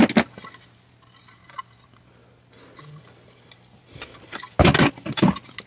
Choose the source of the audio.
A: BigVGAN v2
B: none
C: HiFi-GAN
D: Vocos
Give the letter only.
B